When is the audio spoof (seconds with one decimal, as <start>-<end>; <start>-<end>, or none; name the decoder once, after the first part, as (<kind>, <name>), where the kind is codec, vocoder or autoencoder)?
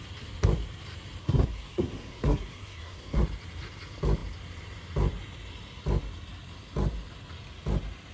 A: 1.2-3.2 (codec, SNAC)